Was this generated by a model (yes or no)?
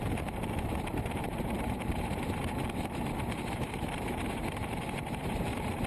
yes